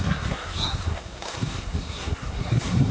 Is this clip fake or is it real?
fake